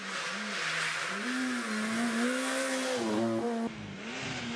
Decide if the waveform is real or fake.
real